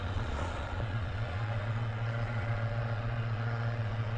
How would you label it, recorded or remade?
remade